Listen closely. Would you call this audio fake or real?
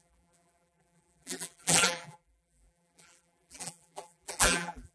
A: fake